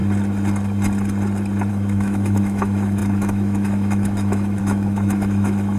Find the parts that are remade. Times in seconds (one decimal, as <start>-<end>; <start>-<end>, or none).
1.7-5.8